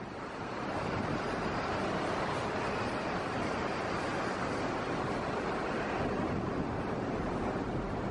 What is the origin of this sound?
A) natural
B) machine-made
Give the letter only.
A